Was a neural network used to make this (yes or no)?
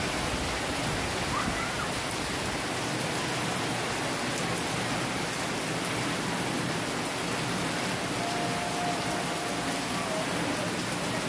no